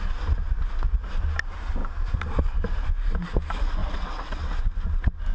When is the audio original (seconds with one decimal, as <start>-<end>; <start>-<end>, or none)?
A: 0.0-3.8; 4.5-5.3